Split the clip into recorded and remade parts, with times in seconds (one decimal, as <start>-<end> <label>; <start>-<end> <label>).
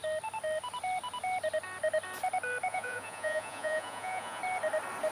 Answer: 0.0-2.7 recorded; 2.7-4.4 remade; 4.4-5.1 recorded